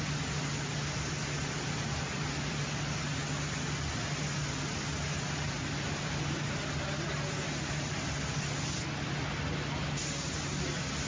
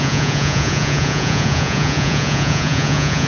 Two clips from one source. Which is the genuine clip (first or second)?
first